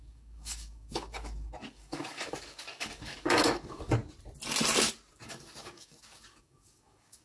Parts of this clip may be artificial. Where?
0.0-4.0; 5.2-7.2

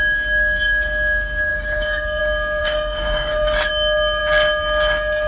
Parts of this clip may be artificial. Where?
1.5-2.2; 2.6-3.7

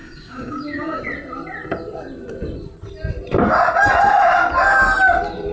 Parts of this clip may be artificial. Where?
0.0-1.0

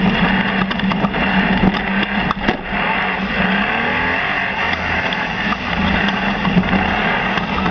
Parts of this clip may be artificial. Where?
none

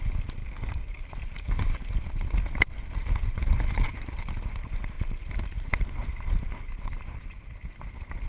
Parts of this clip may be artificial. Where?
0.4-1.0

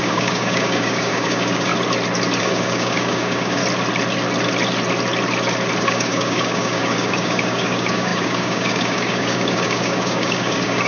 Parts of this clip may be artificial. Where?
0.0-1.7; 2.4-3.6; 5.8-10.9

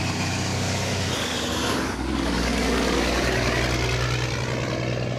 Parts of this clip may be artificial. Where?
0.5-3.6

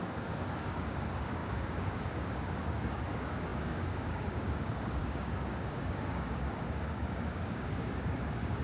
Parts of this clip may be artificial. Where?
0.0-8.6